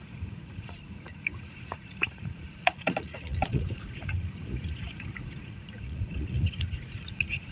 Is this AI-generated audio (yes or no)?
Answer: yes